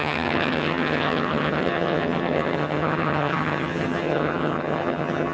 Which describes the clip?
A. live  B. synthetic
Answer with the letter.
B